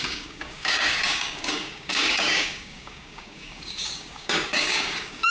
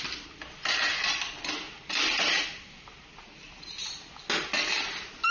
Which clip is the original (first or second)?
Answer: second